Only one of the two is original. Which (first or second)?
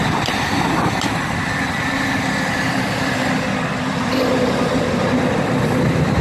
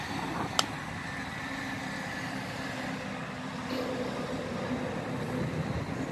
second